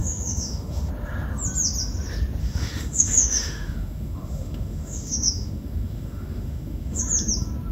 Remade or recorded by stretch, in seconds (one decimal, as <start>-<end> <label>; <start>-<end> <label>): 0.0-0.9 remade; 0.9-2.4 recorded; 2.4-7.0 remade; 7.0-7.7 recorded